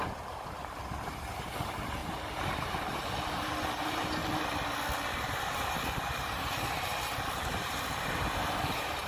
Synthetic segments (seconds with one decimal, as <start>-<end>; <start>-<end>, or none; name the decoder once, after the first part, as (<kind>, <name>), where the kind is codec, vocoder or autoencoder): 0.0-4.2 (vocoder, BigVGAN v2); 5.2-9.1